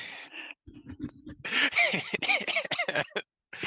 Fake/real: real